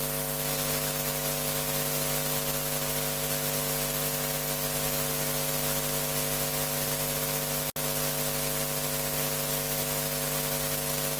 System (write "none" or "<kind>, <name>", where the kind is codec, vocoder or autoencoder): none